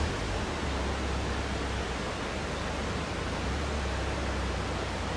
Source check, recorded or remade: recorded